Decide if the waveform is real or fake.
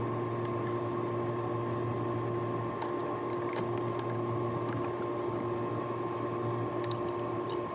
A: real